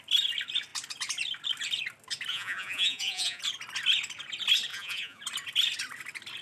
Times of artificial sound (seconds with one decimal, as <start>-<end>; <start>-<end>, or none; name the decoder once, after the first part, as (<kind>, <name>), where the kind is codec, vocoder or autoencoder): 2.3-3.4 (vocoder, Vocos); 4.7-5.2